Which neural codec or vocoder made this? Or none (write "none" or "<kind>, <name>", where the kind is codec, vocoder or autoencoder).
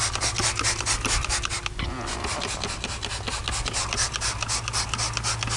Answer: none